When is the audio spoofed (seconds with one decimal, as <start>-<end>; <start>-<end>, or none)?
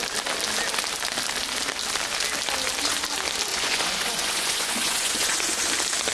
3.5-5.6